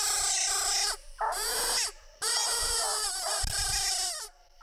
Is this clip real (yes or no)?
no